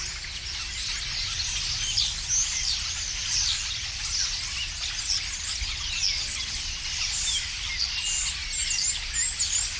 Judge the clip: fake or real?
real